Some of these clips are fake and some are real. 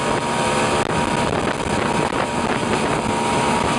real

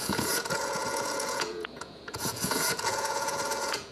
fake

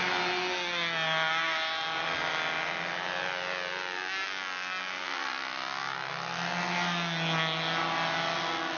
real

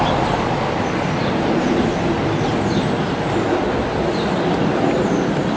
real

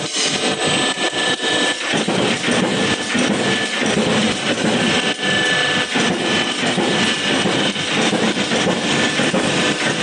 real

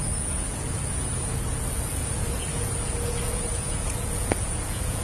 fake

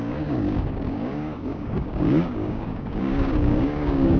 fake